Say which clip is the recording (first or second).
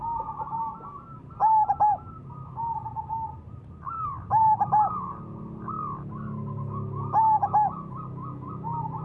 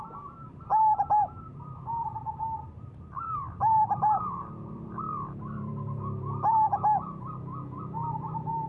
first